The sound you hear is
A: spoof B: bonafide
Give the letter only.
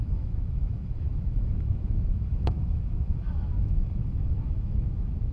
A